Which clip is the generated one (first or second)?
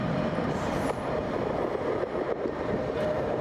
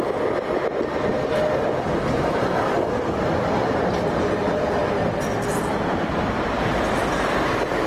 first